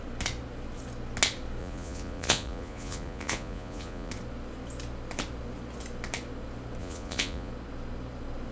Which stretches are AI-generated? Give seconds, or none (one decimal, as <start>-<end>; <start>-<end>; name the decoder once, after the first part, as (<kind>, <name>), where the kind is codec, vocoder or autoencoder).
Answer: 1.6-4.1 (vocoder, Vocos); 6.8-7.5